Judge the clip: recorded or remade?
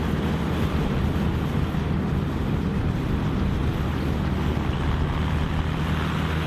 recorded